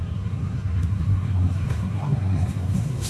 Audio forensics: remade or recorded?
remade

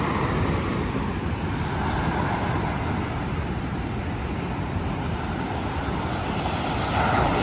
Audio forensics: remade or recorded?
recorded